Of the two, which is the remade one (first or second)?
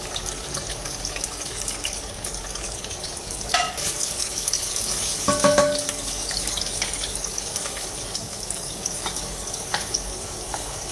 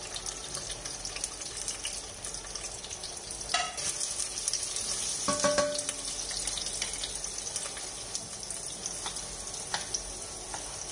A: first